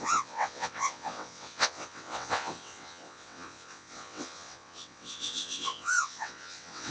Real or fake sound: fake